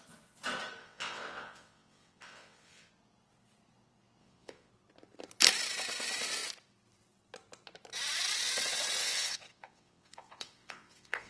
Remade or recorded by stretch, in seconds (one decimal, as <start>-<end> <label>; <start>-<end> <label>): 0.0-0.8 recorded; 0.8-2.9 remade; 2.9-4.2 recorded; 4.2-4.7 remade; 4.7-9.0 recorded; 9.0-11.3 remade